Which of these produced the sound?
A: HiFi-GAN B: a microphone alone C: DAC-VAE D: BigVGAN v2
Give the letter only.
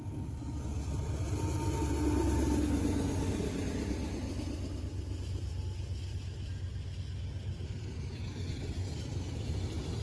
B